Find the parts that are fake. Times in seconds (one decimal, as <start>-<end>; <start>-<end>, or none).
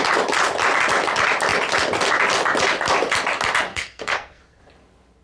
3.7-4.6